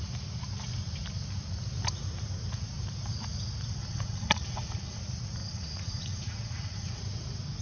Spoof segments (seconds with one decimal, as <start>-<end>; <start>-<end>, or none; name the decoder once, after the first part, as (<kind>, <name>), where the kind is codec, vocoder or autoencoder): 3.8-5.0 (vocoder, Vocos); 5.4-7.0